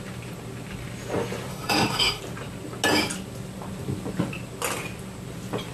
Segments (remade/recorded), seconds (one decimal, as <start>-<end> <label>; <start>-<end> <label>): 0.0-1.5 recorded; 1.5-2.2 remade; 2.2-5.7 recorded